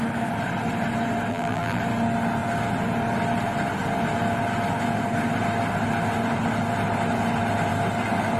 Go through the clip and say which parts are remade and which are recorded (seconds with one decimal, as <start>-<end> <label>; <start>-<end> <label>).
0.0-1.3 recorded; 1.3-1.8 remade; 1.8-8.4 recorded

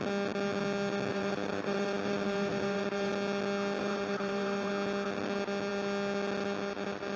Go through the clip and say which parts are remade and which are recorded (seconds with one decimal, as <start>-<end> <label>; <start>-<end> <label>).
0.0-1.1 recorded; 1.1-3.1 remade; 3.1-3.8 recorded; 3.8-4.7 remade; 4.7-7.2 recorded

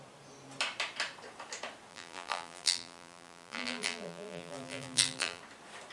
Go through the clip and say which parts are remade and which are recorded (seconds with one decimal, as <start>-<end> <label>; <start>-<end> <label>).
0.0-1.9 recorded; 1.9-5.4 remade; 5.4-5.9 recorded

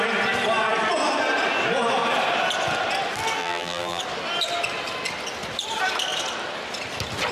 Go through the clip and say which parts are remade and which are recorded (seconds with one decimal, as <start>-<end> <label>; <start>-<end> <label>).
0.0-3.4 recorded; 3.4-4.0 remade; 4.0-7.3 recorded

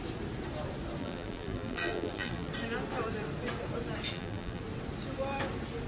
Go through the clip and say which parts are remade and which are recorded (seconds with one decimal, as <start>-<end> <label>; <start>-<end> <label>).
0.0-1.0 recorded; 1.0-2.5 remade; 2.5-4.1 recorded; 4.1-4.6 remade; 4.6-5.9 recorded

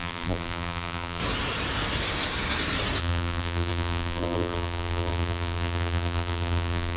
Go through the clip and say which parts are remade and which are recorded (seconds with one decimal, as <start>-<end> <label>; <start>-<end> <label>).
0.0-1.2 remade; 1.2-3.0 recorded; 3.0-7.0 remade